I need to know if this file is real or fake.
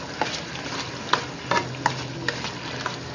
real